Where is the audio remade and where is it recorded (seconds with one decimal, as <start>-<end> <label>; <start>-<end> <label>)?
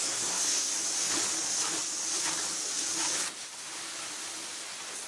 0.0-0.7 remade; 0.7-5.1 recorded